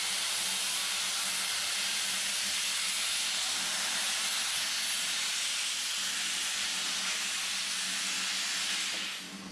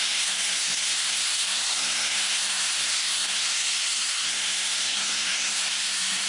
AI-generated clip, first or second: second